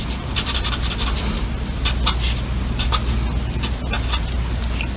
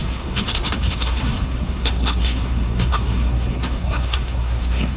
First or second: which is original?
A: first